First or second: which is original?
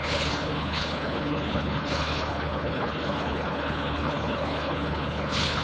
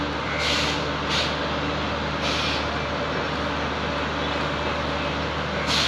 second